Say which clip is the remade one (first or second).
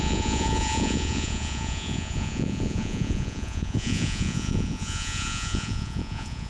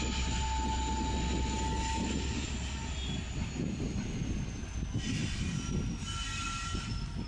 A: first